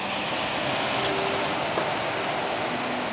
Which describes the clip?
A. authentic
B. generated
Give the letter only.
A